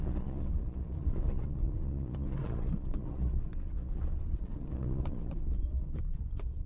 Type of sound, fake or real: fake